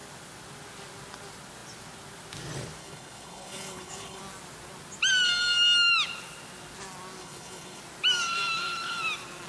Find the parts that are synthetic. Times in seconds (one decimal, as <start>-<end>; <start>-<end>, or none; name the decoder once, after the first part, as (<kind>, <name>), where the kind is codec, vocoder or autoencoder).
2.8-4.2 (codec, HILCodec); 7.2-7.8